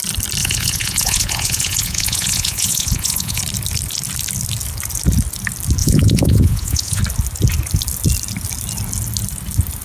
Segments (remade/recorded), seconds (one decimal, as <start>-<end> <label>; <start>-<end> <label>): 0.0-0.4 recorded; 0.4-3.4 remade; 3.4-5.8 recorded; 5.8-7.0 remade; 7.0-9.8 recorded